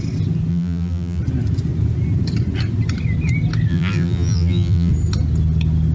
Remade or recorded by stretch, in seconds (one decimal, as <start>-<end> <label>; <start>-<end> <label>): 0.0-0.5 recorded; 0.5-1.2 remade; 1.2-3.7 recorded; 3.7-4.9 remade; 4.9-5.9 recorded